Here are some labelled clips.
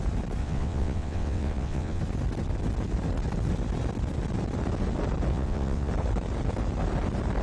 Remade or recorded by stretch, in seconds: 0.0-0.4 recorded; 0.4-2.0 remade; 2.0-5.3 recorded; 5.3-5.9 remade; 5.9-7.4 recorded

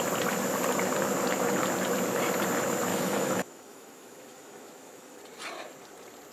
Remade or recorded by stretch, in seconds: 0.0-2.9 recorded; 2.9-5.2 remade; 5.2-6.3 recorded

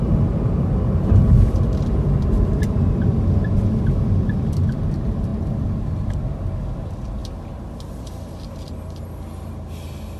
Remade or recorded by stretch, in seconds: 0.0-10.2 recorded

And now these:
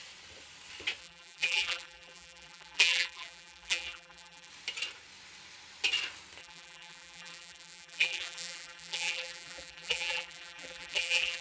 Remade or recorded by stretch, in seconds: 0.0-1.0 recorded; 1.0-4.5 remade; 4.5-6.4 recorded; 6.4-11.4 remade

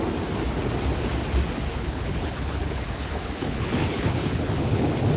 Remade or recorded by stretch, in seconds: 0.0-1.7 recorded; 1.7-4.8 remade; 4.8-5.2 recorded